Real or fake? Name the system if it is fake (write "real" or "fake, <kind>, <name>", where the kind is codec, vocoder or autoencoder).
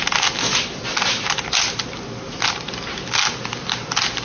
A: real